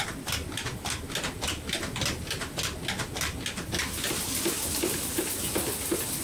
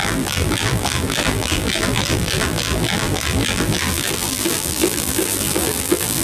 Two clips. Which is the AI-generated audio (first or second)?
second